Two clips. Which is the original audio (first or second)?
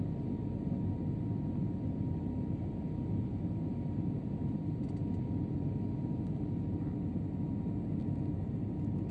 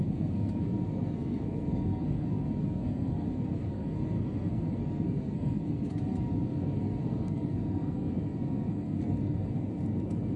first